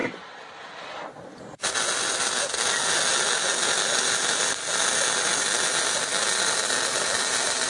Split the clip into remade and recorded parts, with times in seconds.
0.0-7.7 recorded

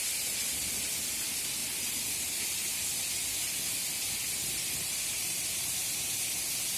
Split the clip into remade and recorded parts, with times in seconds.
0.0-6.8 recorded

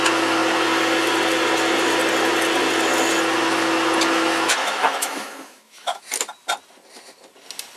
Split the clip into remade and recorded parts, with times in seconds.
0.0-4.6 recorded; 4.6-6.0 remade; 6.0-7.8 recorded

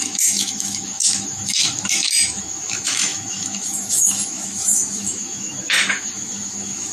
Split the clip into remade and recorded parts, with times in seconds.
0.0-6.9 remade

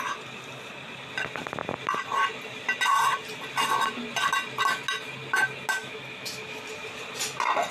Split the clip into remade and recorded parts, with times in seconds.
0.0-5.8 recorded; 5.8-6.6 remade; 6.6-7.7 recorded